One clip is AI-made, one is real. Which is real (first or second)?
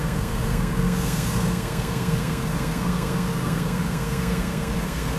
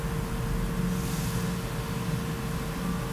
second